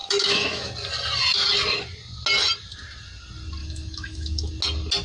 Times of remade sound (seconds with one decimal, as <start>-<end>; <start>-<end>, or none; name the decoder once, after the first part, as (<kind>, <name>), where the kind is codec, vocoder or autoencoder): 0.0-0.7 (autoencoder, DAC-VAE); 3.6-4.5